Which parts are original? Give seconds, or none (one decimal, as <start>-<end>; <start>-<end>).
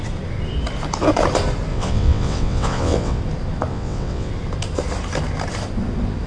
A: 0.0-1.7; 3.2-3.7; 4.3-6.3